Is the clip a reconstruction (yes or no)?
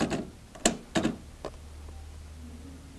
no